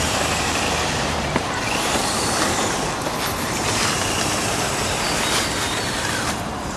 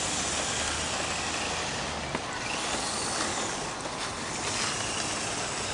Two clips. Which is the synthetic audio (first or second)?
first